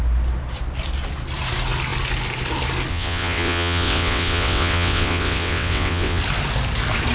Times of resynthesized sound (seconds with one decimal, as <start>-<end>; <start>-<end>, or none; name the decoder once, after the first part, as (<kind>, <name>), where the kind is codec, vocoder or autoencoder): 2.9-6.2 (vocoder, WaveNeXt)